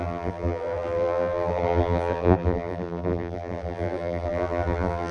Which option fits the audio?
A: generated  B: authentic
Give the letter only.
A